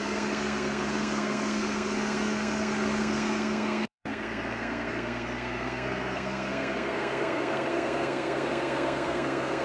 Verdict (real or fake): fake